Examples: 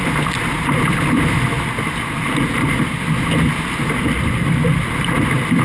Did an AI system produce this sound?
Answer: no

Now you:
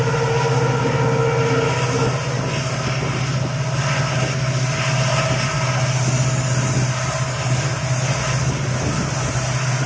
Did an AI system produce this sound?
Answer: no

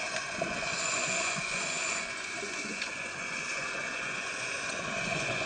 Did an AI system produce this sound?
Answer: yes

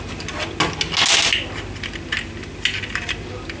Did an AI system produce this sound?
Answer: no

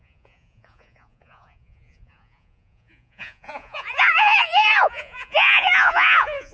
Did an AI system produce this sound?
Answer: yes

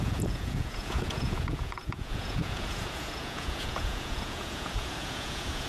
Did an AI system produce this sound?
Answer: yes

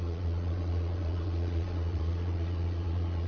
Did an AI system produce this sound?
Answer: yes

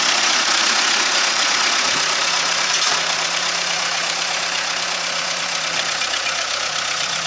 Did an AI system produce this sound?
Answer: yes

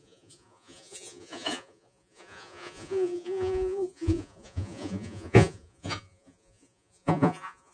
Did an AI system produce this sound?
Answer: yes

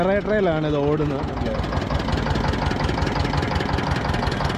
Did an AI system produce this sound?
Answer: no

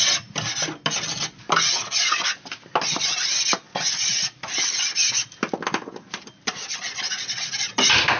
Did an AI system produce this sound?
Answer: no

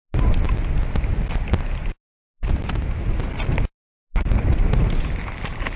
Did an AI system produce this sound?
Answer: no